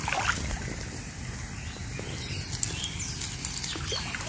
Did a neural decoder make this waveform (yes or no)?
no